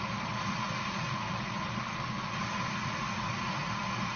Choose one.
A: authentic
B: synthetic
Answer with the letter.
B